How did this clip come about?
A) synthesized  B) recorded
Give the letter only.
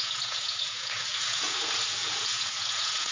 A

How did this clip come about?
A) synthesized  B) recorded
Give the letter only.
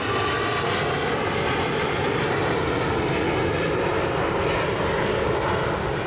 B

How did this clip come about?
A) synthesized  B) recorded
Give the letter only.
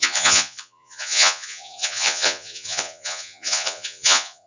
A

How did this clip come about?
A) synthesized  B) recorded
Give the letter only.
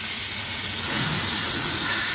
A